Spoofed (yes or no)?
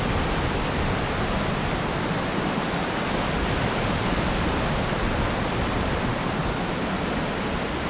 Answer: no